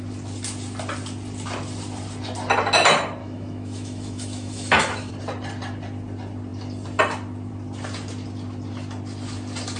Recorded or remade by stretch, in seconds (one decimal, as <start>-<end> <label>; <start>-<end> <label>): 0.0-3.2 recorded; 3.2-5.1 remade; 5.1-9.8 recorded